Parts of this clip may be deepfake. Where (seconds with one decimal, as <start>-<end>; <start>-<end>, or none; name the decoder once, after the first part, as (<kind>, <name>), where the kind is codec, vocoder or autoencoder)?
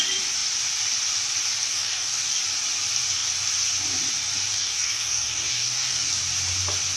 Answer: 1.7-2.4 (codec, DAC); 4.5-6.1